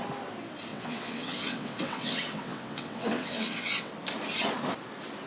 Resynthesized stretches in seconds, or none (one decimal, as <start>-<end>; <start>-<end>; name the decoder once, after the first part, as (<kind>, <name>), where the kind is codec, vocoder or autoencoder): 0.7-3.9 (vocoder, WaveNeXt)